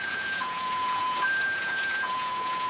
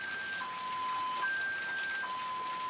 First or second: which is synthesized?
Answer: first